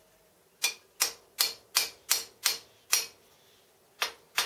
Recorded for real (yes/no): yes